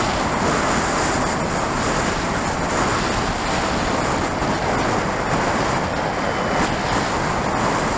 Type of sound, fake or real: real